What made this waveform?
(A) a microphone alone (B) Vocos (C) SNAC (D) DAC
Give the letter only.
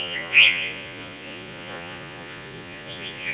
B